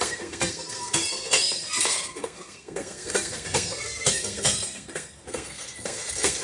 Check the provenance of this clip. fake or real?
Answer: fake